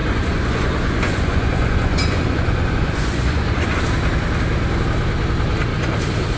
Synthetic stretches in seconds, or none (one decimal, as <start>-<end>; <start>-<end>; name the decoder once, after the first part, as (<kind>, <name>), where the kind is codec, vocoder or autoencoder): 0.0-3.8 (vocoder, Vocos)